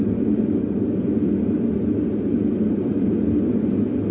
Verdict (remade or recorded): recorded